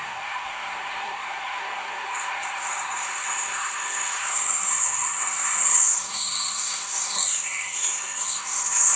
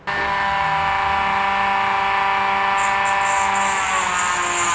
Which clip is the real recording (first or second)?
second